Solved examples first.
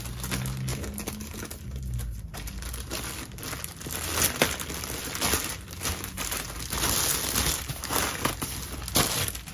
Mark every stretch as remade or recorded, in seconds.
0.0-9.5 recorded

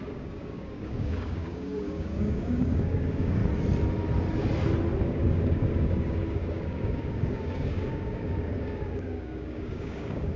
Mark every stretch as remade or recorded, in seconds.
0.0-3.4 remade; 3.4-5.0 recorded; 5.0-10.4 remade

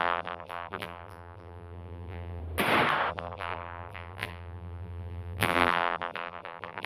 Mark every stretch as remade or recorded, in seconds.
0.0-2.4 remade; 2.4-3.1 recorded; 3.1-6.9 remade

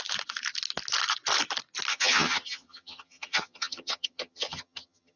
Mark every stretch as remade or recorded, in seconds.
0.0-1.9 recorded; 1.9-5.2 remade